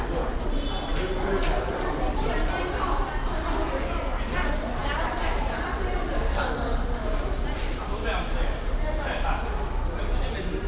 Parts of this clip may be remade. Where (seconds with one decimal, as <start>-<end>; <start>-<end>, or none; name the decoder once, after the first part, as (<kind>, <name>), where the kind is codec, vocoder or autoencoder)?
4.8-5.6 (vocoder, BigVGAN v2)